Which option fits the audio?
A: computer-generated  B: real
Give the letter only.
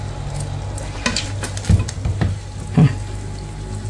B